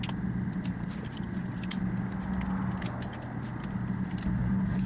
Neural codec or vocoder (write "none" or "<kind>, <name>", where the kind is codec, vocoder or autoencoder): none